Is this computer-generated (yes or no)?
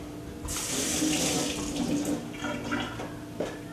no